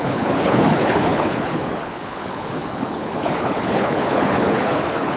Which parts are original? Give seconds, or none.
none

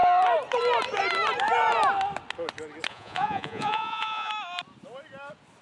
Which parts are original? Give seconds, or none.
0.0-2.9; 4.3-5.6

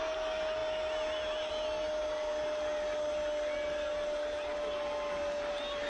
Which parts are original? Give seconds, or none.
0.0-5.9

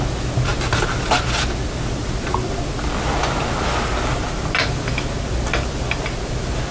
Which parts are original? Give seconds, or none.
0.0-6.7

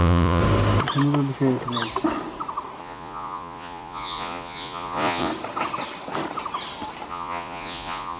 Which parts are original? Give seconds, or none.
0.4-2.8; 5.3-7.1

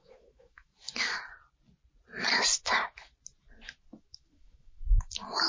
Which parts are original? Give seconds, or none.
0.7-4.0